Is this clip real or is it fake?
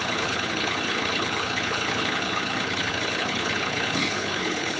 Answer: fake